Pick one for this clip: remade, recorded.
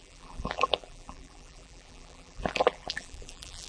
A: remade